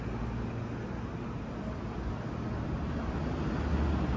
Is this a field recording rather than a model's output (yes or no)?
yes